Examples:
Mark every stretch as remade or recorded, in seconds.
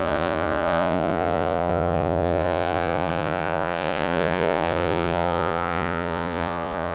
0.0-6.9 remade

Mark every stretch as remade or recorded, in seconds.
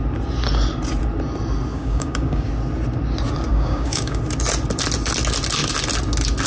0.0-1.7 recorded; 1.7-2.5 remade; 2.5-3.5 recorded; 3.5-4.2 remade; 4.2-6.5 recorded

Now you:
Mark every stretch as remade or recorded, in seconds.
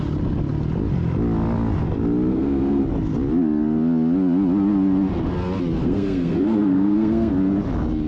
0.0-2.3 recorded; 2.3-2.8 remade; 2.8-5.8 recorded; 5.8-7.3 remade; 7.3-8.1 recorded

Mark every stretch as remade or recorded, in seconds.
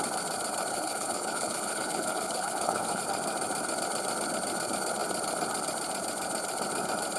0.0-0.7 recorded; 0.7-3.0 remade; 3.0-7.2 recorded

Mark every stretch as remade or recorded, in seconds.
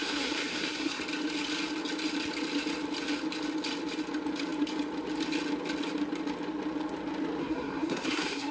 0.0-1.0 remade; 1.0-7.4 recorded; 7.4-8.5 remade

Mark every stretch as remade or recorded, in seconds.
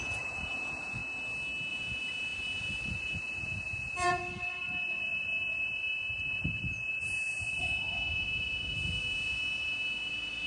0.0-1.0 remade; 1.0-1.7 recorded; 1.7-10.5 remade